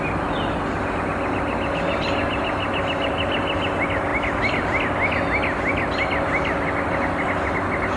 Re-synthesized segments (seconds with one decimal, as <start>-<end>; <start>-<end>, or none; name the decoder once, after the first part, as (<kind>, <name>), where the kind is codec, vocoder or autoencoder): none